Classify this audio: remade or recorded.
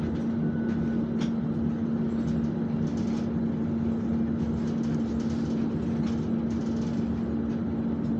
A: recorded